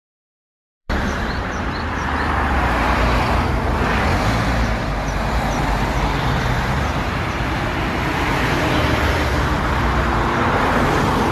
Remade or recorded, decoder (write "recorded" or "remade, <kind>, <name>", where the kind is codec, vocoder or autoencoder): remade, vocoder, BigVGAN v2